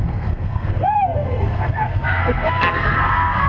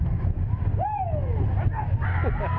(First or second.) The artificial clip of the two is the first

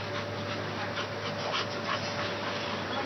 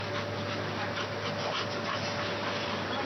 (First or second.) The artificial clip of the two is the second